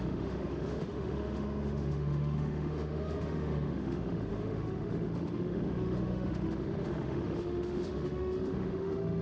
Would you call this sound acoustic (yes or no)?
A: no